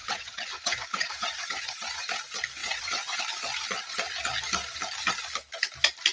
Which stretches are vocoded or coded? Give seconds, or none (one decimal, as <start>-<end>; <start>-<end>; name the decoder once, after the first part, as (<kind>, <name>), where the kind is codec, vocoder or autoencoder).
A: 0.0-2.2 (vocoder, WaveNeXt); 2.6-3.2